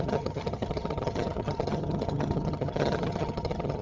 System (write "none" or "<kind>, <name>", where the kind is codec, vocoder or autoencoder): vocoder, HiFi-GAN